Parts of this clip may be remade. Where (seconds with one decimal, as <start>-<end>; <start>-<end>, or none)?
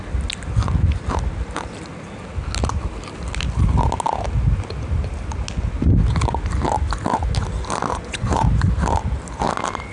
7.9-8.5